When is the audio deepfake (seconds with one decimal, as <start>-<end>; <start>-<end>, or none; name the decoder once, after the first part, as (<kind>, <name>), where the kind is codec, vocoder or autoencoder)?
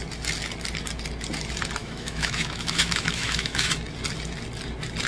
1.8-3.7 (autoencoder, DAC-VAE)